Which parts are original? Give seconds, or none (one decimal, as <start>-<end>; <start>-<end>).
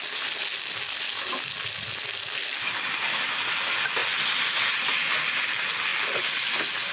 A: 0.0-6.9